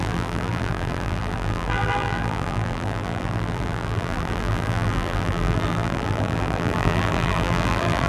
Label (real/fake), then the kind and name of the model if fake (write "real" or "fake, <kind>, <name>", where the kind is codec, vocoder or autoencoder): fake, vocoder, BigVGAN v2